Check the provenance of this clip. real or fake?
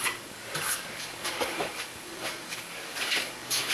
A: fake